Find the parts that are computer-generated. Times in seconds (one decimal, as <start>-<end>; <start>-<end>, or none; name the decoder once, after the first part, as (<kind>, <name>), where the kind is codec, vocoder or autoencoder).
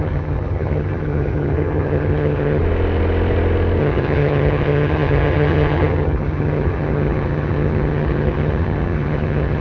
0.0-2.6 (vocoder, HiFi-GAN); 3.8-9.6